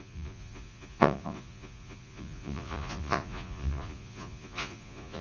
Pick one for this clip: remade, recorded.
remade